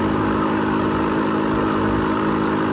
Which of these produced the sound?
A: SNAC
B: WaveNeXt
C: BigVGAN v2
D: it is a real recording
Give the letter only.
D